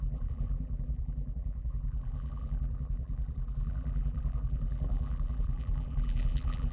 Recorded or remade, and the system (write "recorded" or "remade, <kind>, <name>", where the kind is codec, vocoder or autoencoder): remade, vocoder, BigVGAN v2